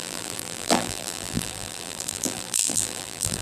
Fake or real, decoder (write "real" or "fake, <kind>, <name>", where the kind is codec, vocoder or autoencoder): fake, vocoder, BigVGAN v2